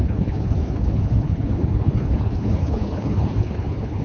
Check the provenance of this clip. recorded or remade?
remade